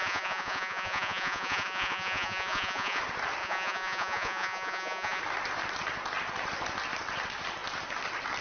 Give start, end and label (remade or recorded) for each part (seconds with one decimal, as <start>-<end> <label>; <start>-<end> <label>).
0.0-3.0 remade; 3.0-3.4 recorded; 3.4-5.2 remade; 5.2-8.4 recorded